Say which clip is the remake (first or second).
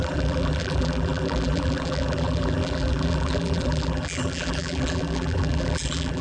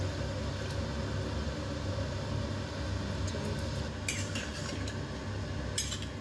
first